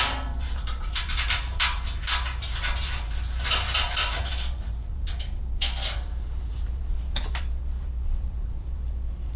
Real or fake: fake